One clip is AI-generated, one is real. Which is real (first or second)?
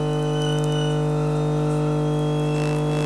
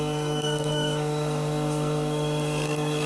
first